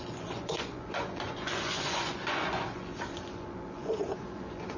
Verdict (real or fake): fake